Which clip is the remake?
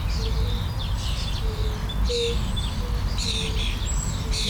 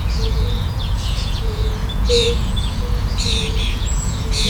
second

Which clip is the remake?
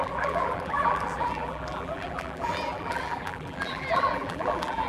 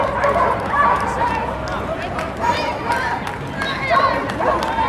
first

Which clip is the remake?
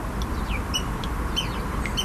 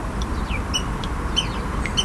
second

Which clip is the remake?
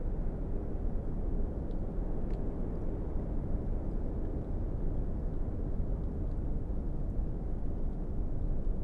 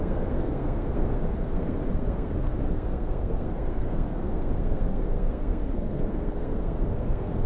second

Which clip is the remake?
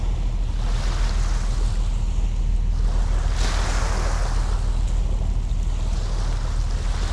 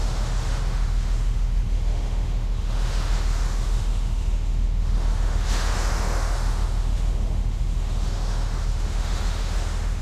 second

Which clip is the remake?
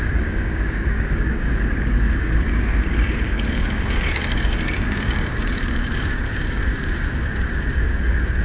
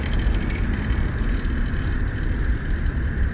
first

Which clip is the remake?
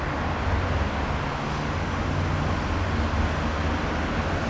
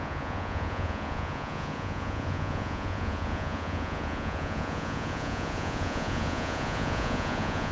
second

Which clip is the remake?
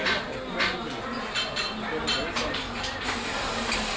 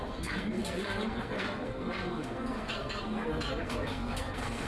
second